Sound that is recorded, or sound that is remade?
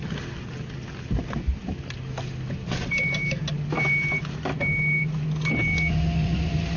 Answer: recorded